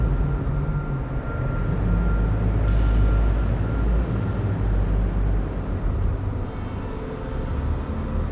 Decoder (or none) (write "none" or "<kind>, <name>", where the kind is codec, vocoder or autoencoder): none